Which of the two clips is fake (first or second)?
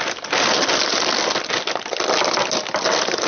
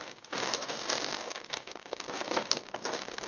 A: second